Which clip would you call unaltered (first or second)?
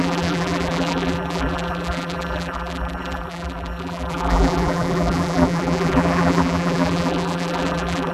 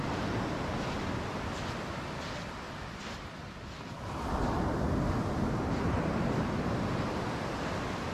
second